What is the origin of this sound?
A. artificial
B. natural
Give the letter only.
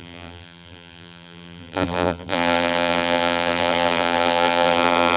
A